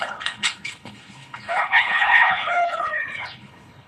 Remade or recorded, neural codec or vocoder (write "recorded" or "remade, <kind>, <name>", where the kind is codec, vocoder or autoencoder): remade, codec, HILCodec